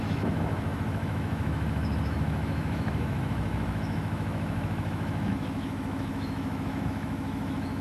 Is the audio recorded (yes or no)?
no